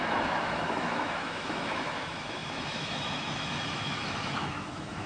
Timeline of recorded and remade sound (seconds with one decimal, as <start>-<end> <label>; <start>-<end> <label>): 0.0-5.1 remade